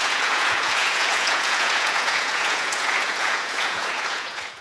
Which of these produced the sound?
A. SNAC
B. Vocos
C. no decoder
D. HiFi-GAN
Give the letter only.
B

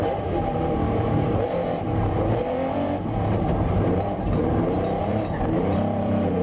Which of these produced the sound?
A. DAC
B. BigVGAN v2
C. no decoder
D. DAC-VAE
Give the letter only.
B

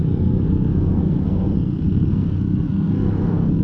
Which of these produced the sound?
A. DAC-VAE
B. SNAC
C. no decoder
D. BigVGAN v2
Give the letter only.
B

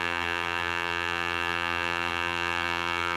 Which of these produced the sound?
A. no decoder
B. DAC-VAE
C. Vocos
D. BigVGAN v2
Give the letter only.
D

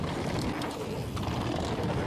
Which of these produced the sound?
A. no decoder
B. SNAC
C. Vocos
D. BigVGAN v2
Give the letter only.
A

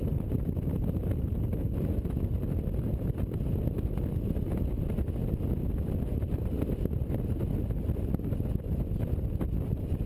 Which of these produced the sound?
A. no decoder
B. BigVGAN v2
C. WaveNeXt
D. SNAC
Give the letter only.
A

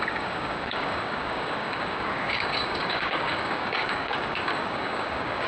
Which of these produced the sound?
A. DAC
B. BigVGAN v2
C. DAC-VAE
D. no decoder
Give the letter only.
A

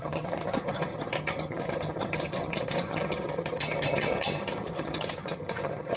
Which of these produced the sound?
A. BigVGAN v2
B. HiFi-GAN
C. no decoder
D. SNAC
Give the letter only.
B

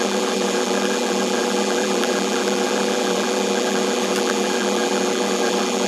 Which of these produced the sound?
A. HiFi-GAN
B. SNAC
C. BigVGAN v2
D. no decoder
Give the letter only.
C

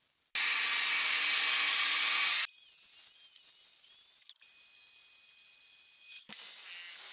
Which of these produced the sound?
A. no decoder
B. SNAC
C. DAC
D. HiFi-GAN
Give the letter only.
A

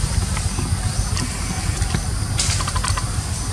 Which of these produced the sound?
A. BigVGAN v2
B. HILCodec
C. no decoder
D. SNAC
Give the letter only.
C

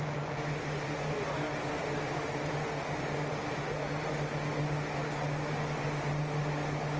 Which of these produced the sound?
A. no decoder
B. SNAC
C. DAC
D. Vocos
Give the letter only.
A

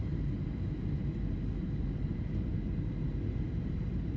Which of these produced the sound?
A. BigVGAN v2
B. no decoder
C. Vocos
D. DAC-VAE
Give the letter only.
A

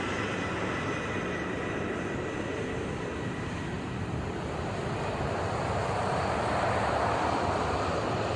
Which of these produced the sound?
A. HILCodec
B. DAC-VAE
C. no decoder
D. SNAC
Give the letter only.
C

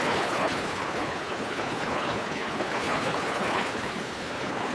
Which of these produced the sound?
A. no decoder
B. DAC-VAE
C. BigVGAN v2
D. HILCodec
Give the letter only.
D